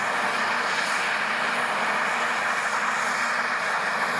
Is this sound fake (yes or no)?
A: no